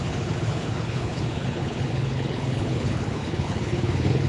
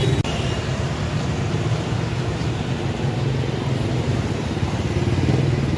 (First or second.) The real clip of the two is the second